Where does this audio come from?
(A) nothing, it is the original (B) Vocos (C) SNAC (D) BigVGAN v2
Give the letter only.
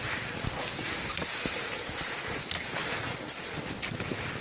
A